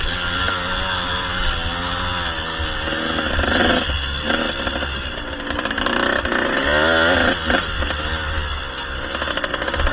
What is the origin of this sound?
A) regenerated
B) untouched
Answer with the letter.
B